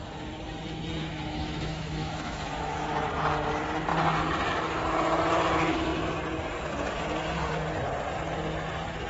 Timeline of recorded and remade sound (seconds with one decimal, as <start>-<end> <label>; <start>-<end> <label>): 0.0-1.0 recorded; 1.0-2.7 remade; 2.7-9.1 recorded